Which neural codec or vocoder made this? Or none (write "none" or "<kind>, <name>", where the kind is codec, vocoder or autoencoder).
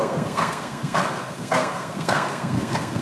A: codec, SNAC